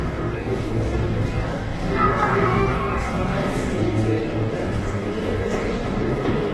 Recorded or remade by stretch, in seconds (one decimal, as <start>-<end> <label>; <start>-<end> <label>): 0.0-6.5 remade